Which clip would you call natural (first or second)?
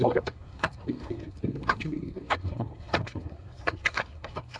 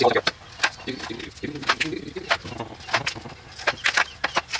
second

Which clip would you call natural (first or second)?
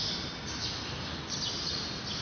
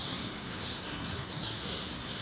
first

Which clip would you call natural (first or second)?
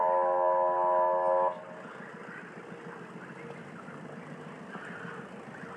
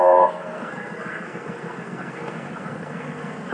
first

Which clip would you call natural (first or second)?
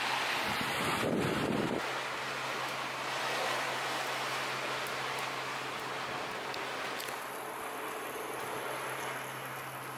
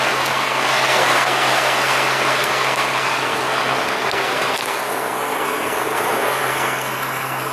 first